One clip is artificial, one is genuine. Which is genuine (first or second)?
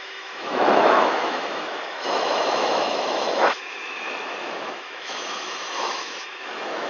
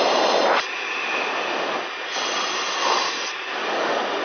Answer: second